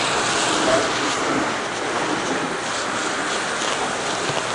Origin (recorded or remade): recorded